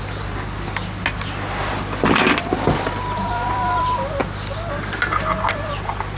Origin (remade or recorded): recorded